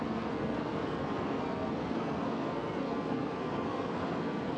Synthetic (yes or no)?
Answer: yes